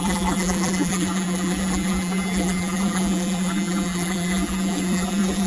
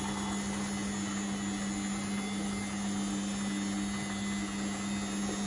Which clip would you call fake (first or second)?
first